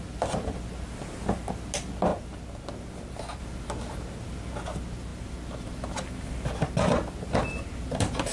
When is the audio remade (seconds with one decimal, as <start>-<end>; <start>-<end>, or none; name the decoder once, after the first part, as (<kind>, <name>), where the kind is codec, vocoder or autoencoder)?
none